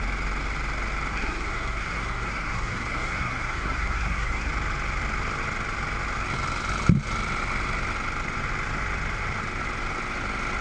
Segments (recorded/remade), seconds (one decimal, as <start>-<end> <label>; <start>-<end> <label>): 0.0-1.1 recorded; 1.1-4.5 remade; 4.5-10.6 recorded